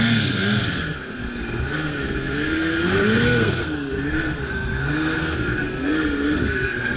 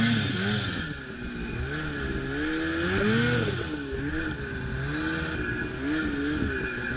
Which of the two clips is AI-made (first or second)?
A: first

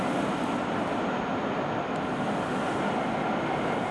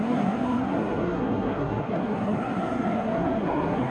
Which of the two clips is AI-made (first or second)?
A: second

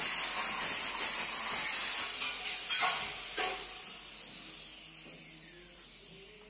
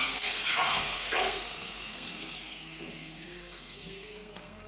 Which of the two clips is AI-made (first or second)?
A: second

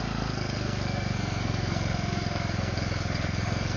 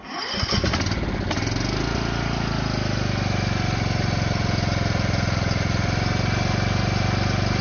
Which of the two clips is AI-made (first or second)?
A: first